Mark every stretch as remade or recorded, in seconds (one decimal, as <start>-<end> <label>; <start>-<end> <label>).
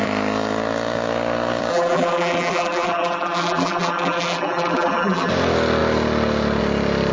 0.0-1.7 recorded; 1.7-5.3 remade; 5.3-7.1 recorded